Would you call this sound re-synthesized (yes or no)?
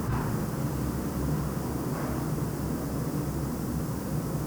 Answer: no